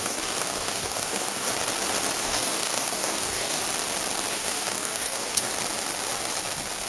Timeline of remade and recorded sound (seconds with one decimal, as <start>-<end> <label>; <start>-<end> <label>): 0.0-1.5 remade; 1.5-2.2 recorded; 2.2-3.6 remade; 3.6-4.3 recorded; 4.3-5.5 remade; 5.5-6.9 recorded

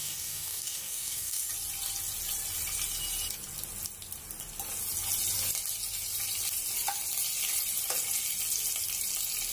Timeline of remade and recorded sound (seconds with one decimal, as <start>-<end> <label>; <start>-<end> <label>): 0.0-1.5 remade; 1.5-9.5 recorded

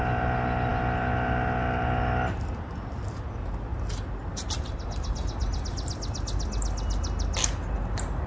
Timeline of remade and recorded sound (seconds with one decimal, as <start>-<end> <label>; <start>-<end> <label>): 0.0-8.3 recorded

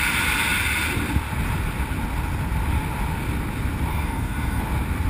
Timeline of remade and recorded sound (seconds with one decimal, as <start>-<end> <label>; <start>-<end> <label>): 0.0-3.9 recorded; 3.9-4.6 remade; 4.6-5.1 recorded

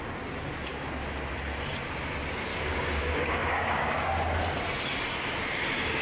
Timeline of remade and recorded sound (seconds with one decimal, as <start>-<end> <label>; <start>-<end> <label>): 0.0-2.5 recorded; 2.5-3.9 remade; 3.9-6.0 recorded

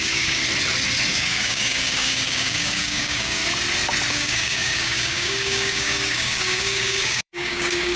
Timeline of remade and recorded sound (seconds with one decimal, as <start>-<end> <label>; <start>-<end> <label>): 0.0-0.4 remade; 0.4-1.1 recorded; 1.1-3.4 remade; 3.4-4.1 recorded; 4.1-8.0 remade